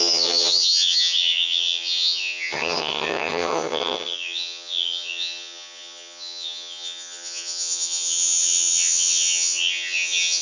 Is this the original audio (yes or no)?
no